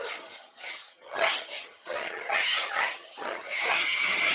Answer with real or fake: fake